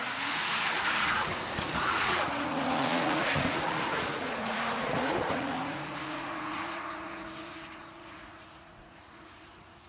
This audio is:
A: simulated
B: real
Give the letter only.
A